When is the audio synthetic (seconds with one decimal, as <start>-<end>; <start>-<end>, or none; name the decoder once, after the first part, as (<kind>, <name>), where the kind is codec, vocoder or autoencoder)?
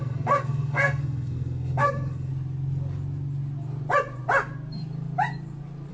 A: 0.0-2.3 (codec, SNAC)